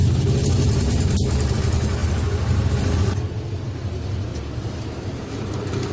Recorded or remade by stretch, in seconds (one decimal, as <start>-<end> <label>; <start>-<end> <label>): 0.0-4.3 recorded; 4.3-5.9 remade